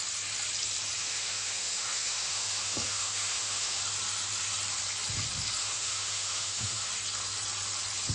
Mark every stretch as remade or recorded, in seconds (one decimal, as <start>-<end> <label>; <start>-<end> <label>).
0.0-1.0 recorded; 1.0-3.8 remade; 3.8-5.6 recorded; 5.6-6.9 remade; 6.9-8.1 recorded